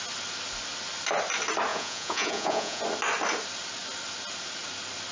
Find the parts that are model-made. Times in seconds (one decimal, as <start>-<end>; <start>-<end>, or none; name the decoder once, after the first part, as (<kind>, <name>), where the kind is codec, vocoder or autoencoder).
1.7-2.8 (vocoder, Vocos)